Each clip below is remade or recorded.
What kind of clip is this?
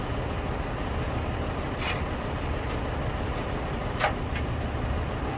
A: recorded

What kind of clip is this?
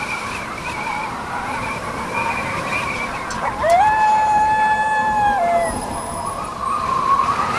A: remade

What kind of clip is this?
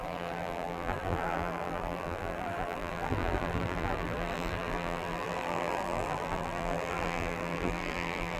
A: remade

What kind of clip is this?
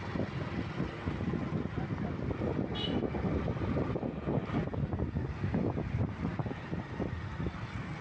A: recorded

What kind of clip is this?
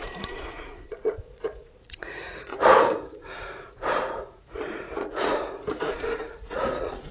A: remade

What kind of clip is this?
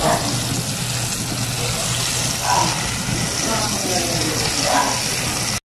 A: recorded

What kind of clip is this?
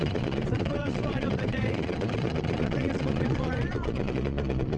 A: remade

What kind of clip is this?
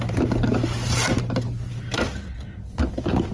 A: recorded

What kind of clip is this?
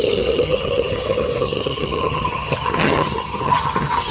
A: remade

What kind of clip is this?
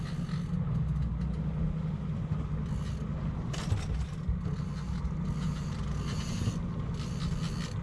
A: recorded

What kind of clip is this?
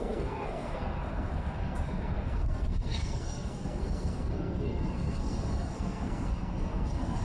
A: remade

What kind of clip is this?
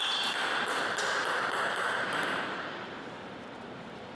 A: remade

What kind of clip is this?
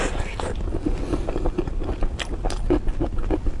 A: recorded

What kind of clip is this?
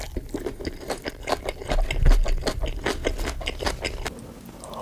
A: recorded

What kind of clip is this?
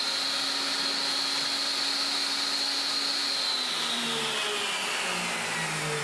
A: recorded